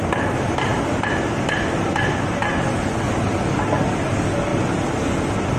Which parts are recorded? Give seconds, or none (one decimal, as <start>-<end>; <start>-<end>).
0.0-5.6